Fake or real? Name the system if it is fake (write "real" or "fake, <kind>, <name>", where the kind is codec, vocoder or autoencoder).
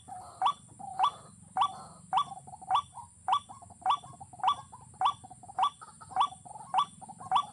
real